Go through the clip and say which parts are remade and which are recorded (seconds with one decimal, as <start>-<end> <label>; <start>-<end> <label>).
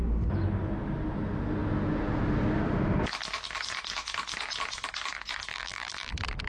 0.0-5.5 recorded; 5.5-6.1 remade; 6.1-6.5 recorded